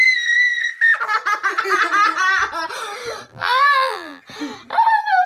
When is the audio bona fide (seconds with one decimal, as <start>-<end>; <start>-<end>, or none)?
0.0-3.3; 4.2-5.3